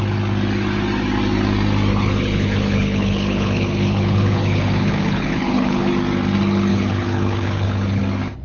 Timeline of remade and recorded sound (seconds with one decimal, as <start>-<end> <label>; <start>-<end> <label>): 0.0-1.9 recorded; 1.9-5.9 remade; 5.9-6.7 recorded; 6.7-8.0 remade; 8.0-8.4 recorded